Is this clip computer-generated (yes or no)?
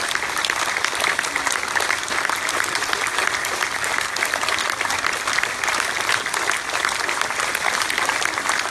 no